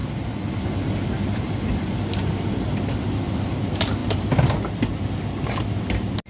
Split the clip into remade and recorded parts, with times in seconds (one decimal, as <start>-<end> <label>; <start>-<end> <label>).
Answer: 0.0-6.3 recorded